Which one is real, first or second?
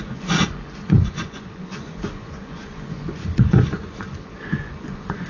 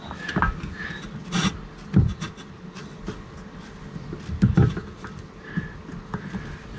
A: second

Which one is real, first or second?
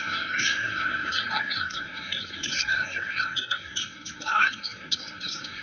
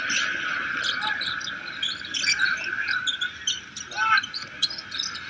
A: second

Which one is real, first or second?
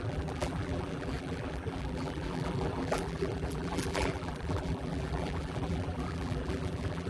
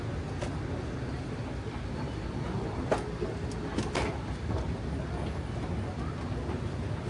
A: second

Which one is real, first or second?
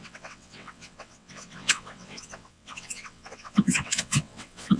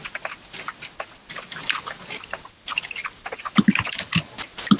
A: second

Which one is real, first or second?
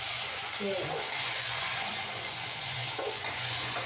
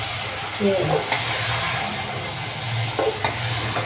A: second